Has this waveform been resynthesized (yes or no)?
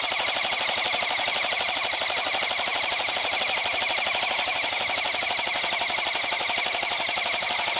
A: no